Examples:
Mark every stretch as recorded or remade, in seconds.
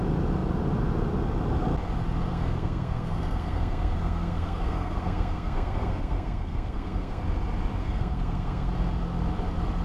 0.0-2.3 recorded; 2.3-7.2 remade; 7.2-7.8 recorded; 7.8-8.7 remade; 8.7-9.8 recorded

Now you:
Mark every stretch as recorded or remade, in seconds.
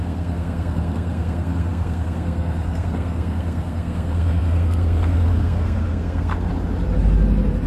0.0-6.5 remade; 6.5-7.7 recorded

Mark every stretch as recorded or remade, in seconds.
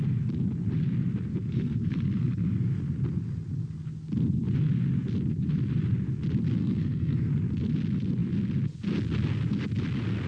0.0-1.3 recorded; 1.3-2.8 remade; 2.8-6.6 recorded; 6.6-7.3 remade; 7.3-10.3 recorded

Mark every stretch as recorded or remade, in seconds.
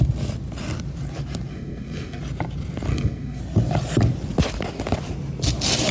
0.0-1.5 recorded; 1.5-2.2 remade; 2.2-2.9 recorded; 2.9-3.4 remade; 3.4-5.9 recorded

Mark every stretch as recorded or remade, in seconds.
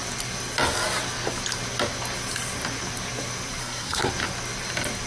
0.0-3.6 recorded; 3.6-4.1 remade; 4.1-5.1 recorded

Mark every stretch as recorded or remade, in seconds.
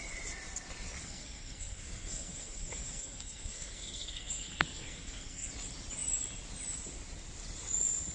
0.0-1.0 recorded; 1.0-5.5 remade; 5.5-8.1 recorded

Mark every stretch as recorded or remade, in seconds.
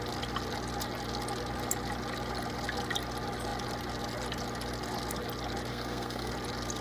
0.0-5.7 recorded; 5.7-6.3 remade; 6.3-6.8 recorded